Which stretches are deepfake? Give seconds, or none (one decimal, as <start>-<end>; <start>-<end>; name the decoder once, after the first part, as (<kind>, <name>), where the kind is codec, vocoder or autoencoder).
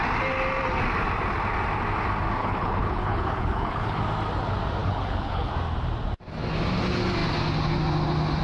2.4-4.0 (codec, HILCodec); 4.8-5.5